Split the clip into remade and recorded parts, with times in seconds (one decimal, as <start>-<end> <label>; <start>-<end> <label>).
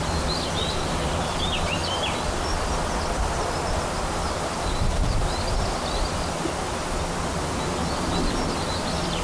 0.0-9.2 recorded